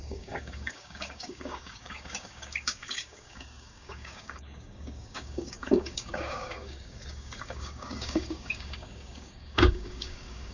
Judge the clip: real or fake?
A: fake